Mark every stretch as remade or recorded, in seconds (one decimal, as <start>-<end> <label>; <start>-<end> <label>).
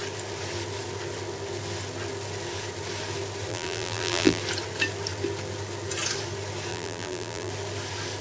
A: 0.0-3.5 recorded; 3.5-4.4 remade; 4.4-6.7 recorded; 6.7-7.5 remade; 7.5-8.2 recorded